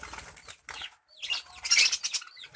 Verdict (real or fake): real